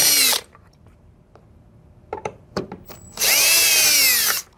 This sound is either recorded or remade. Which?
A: remade